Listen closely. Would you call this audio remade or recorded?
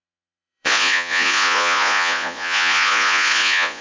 remade